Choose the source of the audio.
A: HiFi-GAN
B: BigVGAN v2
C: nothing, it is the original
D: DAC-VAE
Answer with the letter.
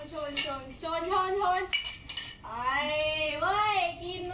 C